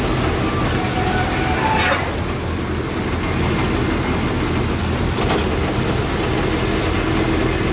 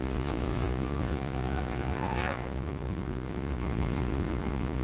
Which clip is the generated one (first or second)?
second